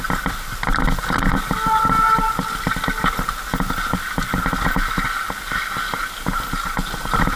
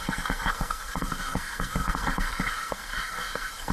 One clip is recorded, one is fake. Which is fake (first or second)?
second